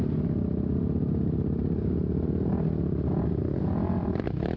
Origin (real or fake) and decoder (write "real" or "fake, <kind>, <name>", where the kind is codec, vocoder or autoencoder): real